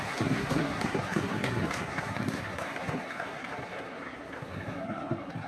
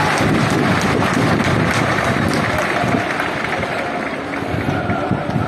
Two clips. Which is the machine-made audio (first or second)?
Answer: first